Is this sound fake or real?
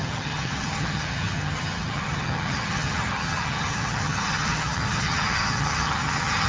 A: fake